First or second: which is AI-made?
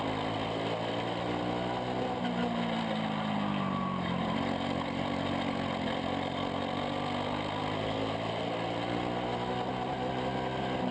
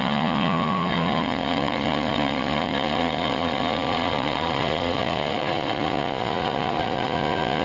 second